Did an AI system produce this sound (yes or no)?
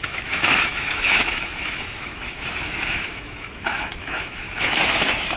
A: yes